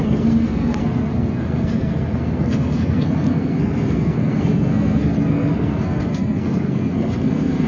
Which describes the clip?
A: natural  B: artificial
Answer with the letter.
B